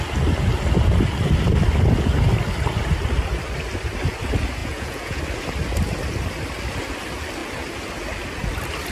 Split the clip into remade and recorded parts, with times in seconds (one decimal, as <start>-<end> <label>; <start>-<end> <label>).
0.0-4.6 recorded; 4.6-5.2 remade; 5.2-8.9 recorded